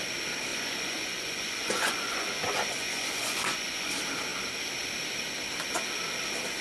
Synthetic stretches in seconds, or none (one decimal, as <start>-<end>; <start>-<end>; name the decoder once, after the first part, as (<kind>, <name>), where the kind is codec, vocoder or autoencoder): 0.5-3.9 (vocoder, Vocos)